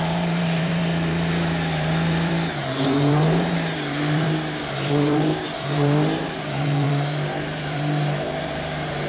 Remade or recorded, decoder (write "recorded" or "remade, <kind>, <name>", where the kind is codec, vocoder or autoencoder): remade, vocoder, BigVGAN v2